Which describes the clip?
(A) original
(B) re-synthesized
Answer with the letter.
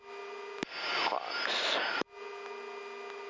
A